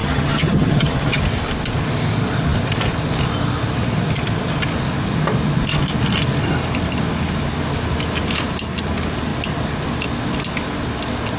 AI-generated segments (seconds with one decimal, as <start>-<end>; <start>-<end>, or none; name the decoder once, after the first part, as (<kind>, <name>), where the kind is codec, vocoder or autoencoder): 0.0-1.2 (vocoder, HiFi-GAN)